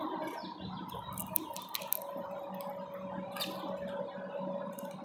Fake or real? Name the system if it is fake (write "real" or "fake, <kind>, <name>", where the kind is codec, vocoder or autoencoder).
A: real